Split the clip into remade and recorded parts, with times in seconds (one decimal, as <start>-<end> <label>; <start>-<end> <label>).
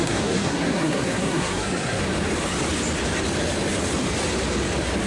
0.0-2.0 remade; 2.0-5.1 recorded